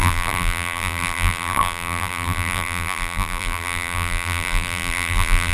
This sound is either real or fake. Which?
fake